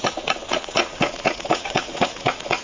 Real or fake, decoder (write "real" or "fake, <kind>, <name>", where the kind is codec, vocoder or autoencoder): fake, vocoder, Vocos